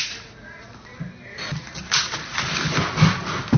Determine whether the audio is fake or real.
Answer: real